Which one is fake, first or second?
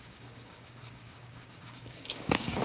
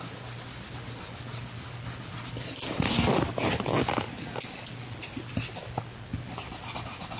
first